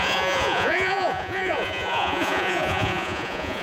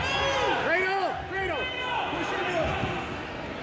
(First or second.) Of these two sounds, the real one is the second